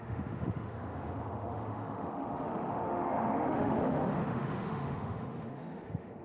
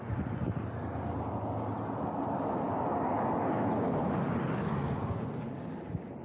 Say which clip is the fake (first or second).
first